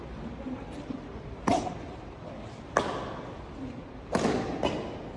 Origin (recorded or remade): recorded